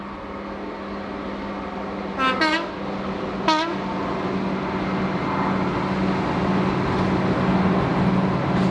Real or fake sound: real